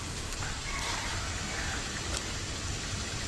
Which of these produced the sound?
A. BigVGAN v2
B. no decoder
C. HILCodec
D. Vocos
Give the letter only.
B